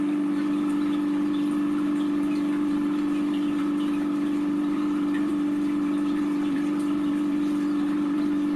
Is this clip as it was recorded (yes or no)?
no